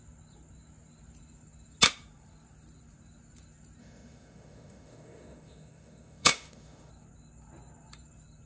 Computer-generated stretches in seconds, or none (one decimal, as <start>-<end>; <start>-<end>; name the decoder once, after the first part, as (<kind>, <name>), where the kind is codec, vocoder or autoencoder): 3.8-6.9 (autoencoder, DAC-VAE)